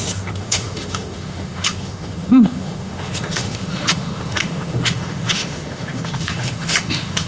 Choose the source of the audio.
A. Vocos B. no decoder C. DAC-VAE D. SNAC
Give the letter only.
C